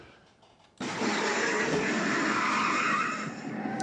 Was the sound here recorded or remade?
recorded